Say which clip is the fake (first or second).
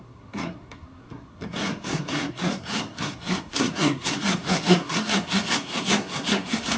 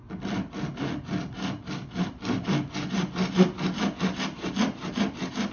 first